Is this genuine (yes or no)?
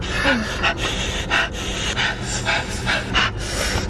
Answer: yes